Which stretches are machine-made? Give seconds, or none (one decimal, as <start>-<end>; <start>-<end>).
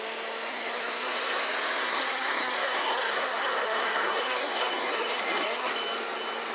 0.5-1.4; 1.8-5.7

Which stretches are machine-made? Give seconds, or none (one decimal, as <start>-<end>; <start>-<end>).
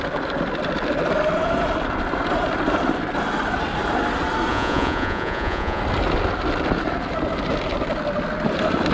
4.5-5.8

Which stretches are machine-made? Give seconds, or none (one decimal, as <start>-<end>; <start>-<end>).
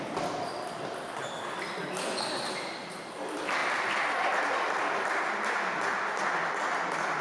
none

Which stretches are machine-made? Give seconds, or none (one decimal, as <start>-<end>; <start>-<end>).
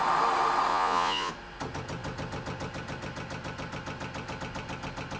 0.7-1.3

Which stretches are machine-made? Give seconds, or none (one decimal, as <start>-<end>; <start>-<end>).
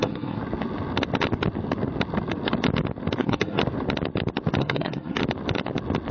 0.0-0.4; 3.2-3.6; 4.6-5.2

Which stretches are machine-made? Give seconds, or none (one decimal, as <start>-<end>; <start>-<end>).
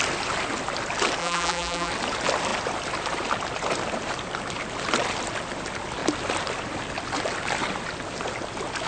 1.2-1.9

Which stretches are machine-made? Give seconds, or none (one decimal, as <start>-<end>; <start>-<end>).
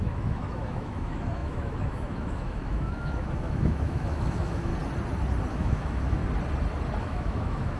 0.0-4.7; 5.5-6.2; 7.0-7.8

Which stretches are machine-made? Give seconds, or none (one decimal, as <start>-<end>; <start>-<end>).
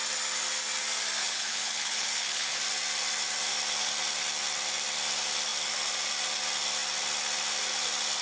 1.2-2.6